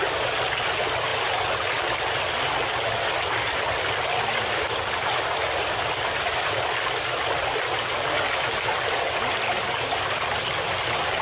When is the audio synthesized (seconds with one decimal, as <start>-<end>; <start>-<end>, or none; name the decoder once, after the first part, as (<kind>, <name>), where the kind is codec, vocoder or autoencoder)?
none